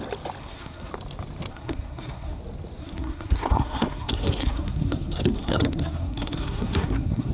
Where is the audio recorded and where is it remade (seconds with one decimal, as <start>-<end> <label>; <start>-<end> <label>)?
0.0-0.4 recorded; 0.4-0.9 remade; 0.9-1.5 recorded; 1.5-2.4 remade; 2.4-2.8 recorded; 2.8-7.3 remade